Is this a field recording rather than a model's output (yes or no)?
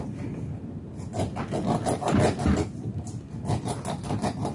yes